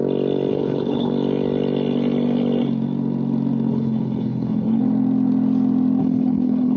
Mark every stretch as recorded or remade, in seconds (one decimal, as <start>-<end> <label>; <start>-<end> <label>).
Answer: 0.0-0.5 recorded; 0.5-1.1 remade; 1.1-3.7 recorded; 3.7-4.8 remade; 4.8-6.0 recorded; 6.0-6.8 remade